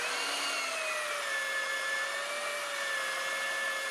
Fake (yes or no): no